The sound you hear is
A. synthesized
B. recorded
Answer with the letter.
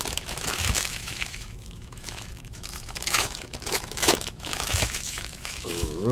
A